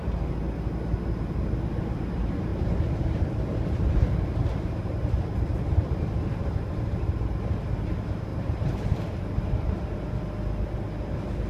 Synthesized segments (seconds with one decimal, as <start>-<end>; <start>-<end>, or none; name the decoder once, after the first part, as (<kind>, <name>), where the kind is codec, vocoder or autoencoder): 2.5-7.1 (vocoder, BigVGAN v2); 8.3-10.1